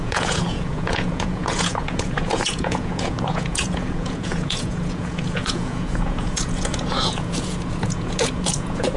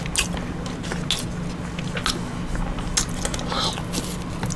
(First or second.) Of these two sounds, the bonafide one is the second